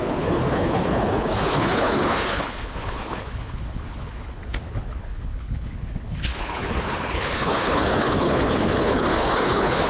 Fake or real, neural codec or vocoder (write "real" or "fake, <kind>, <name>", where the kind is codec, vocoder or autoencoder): fake, codec, HILCodec